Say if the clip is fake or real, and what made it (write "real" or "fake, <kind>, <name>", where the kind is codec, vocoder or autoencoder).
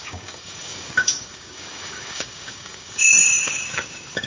fake, codec, DAC